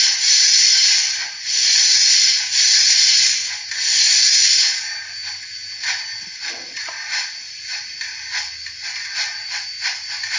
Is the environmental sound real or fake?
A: real